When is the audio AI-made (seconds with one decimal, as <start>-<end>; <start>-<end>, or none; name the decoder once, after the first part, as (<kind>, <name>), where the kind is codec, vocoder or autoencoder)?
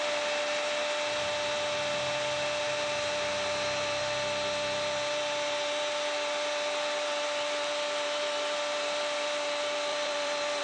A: 9.9-10.6 (vocoder, BigVGAN v2)